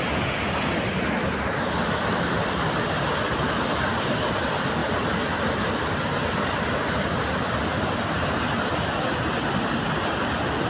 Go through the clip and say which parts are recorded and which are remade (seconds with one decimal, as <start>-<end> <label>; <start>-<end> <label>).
0.0-10.7 recorded